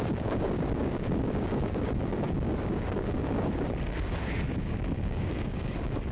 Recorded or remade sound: remade